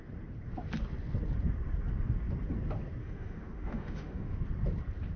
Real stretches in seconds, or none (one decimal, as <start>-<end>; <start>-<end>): 0.0-3.0; 4.4-5.2